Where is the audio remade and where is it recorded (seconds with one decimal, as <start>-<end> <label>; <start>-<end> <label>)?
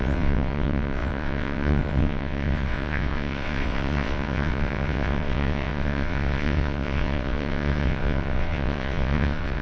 0.0-9.6 remade